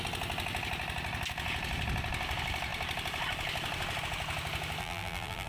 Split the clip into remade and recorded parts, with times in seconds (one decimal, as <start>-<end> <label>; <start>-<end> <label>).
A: 0.0-4.8 recorded; 4.8-5.5 remade